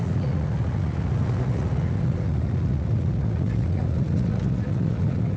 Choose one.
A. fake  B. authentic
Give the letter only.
A